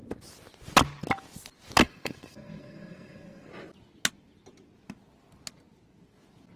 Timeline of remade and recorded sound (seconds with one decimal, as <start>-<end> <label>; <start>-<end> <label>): 0.0-1.8 recorded; 1.8-3.5 remade; 3.5-6.6 recorded